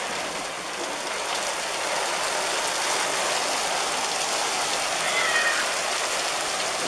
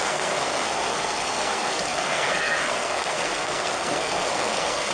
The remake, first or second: second